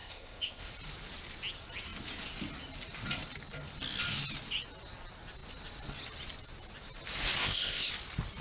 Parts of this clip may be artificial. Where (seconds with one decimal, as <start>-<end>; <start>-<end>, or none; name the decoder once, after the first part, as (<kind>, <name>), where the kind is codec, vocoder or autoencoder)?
0.0-0.7 (codec, ZipCodec); 7.4-7.9